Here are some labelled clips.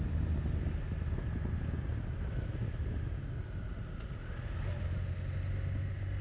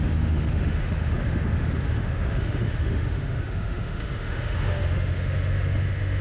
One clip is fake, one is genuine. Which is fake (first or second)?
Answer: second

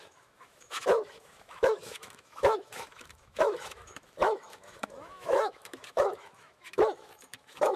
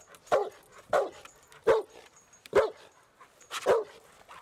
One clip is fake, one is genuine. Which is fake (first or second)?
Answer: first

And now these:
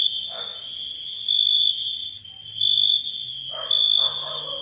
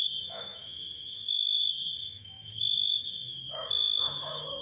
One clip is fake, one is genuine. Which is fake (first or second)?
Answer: second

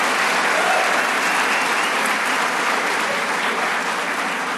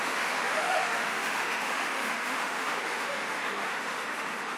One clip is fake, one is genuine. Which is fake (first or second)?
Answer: second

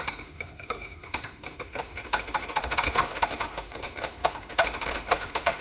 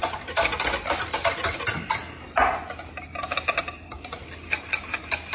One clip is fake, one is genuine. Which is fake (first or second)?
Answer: first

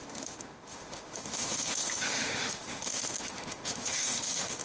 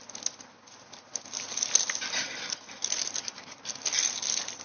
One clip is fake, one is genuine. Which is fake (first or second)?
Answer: first